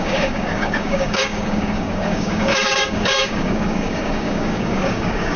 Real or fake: fake